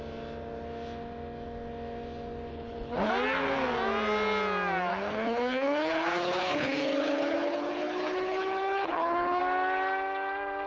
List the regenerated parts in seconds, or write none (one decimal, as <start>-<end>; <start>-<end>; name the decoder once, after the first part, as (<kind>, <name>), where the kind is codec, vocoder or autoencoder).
2.5-3.1 (codec, HILCodec); 4.9-9.4